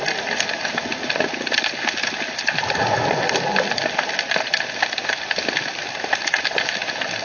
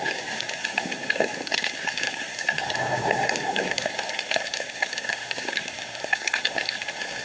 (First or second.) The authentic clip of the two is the first